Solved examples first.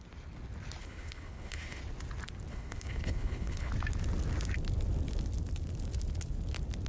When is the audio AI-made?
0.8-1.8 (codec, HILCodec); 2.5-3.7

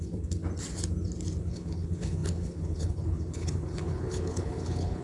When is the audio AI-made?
0.0-0.4 (codec, HILCodec); 1.4-5.0

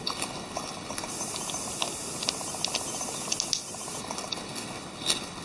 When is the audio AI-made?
0.0-1.1 (codec, HILCodec); 4.0-5.4

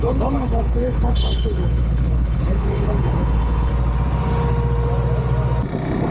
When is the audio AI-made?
0.0-3.7 (codec, HILCodec)

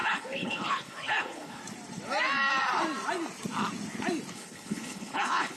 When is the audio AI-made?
0.0-1.6 (codec, HILCodec); 4.3-5.6

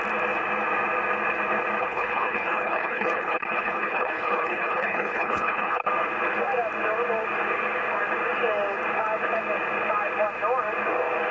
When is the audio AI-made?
1.8-5.9 (codec, HILCodec)